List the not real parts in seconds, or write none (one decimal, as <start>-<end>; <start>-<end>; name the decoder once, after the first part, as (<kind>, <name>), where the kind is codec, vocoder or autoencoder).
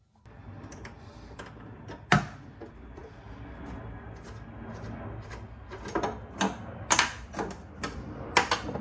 none